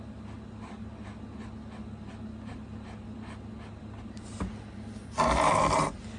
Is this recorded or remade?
recorded